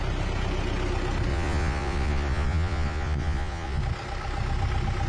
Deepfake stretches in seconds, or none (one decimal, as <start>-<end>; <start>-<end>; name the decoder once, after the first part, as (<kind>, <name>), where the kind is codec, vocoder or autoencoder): 1.3-3.8 (vocoder, Vocos)